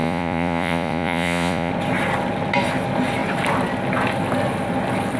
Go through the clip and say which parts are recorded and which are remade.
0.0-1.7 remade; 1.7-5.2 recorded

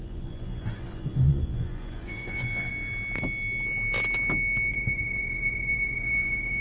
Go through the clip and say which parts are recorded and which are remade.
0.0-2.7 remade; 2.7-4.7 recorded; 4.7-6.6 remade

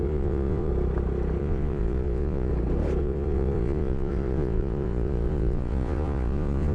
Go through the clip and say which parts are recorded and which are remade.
0.0-0.7 remade; 0.7-1.4 recorded; 1.4-2.5 remade; 2.5-3.0 recorded; 3.0-6.7 remade

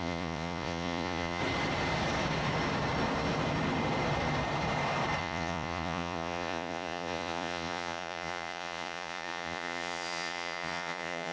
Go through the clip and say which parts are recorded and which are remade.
0.0-1.4 remade; 1.4-5.2 recorded; 5.2-11.3 remade

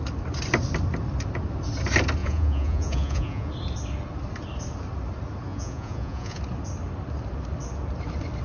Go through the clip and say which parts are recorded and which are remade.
0.0-2.2 recorded; 2.2-3.5 remade; 3.5-5.5 recorded; 5.5-6.4 remade; 6.4-8.4 recorded

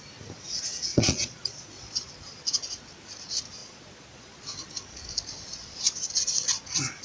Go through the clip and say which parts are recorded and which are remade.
0.0-0.9 recorded; 0.9-2.1 remade; 2.1-3.6 recorded; 3.6-4.4 remade; 4.4-7.0 recorded

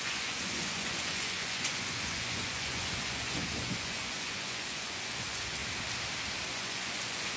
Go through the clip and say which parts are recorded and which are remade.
0.0-5.6 remade; 5.6-6.5 recorded; 6.5-7.4 remade

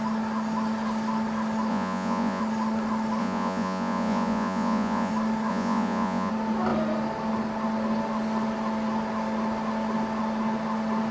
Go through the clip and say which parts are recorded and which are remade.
0.0-1.7 recorded; 1.7-2.4 remade; 2.4-3.2 recorded; 3.2-5.1 remade; 5.1-5.5 recorded; 5.5-6.3 remade; 6.3-11.1 recorded